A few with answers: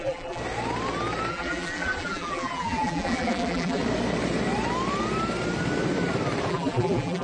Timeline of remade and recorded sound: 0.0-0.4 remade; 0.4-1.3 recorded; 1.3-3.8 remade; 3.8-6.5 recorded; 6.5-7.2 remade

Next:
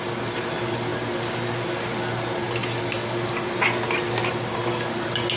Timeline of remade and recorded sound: 0.0-5.4 recorded

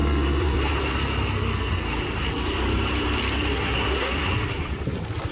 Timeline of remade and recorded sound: 0.0-0.6 remade; 0.6-3.5 recorded; 3.5-4.3 remade; 4.3-5.3 recorded

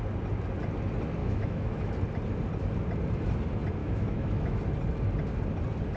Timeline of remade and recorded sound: 0.0-1.2 recorded; 1.2-1.9 remade; 1.9-3.8 recorded; 3.8-4.6 remade; 4.6-6.0 recorded

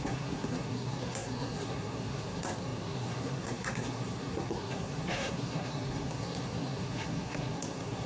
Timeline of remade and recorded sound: 0.0-8.1 remade

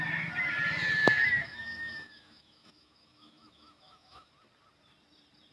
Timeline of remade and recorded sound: 0.0-1.0 recorded; 1.0-4.3 remade; 4.3-5.5 recorded

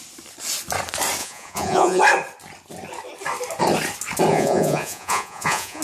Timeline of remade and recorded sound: 0.0-1.2 recorded; 1.2-2.0 remade; 2.0-4.3 recorded; 4.3-5.8 remade